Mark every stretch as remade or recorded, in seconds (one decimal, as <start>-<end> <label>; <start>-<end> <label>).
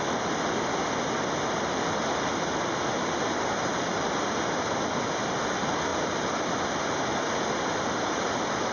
0.0-8.7 recorded